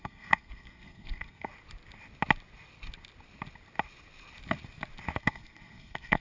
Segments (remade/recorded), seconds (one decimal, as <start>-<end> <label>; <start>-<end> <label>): 0.0-1.5 remade; 1.5-5.2 recorded; 5.2-6.2 remade